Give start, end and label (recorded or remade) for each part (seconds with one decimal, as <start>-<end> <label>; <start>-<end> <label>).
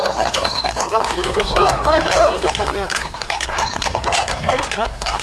0.0-5.2 remade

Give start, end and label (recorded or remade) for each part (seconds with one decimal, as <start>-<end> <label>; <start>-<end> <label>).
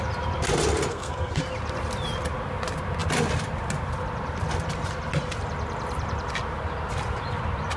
0.0-0.9 recorded; 0.9-1.4 remade; 1.4-7.8 recorded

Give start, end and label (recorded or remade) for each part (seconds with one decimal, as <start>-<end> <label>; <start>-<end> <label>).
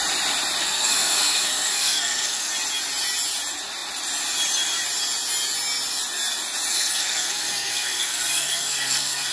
0.0-0.6 recorded; 0.6-2.5 remade; 2.5-6.7 recorded; 6.7-9.3 remade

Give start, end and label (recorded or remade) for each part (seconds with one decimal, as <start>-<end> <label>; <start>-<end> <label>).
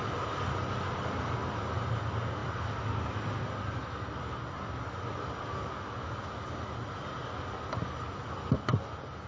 0.0-9.3 recorded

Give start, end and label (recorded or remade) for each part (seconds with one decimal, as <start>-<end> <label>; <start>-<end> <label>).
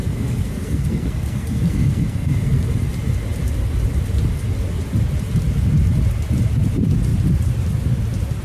0.0-2.7 remade; 2.7-8.4 recorded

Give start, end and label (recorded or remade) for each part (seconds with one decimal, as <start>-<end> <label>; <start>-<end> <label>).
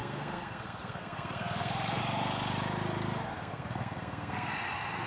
0.0-2.0 remade; 2.0-3.3 recorded; 3.3-4.5 remade; 4.5-5.1 recorded